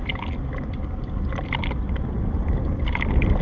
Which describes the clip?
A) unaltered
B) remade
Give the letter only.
A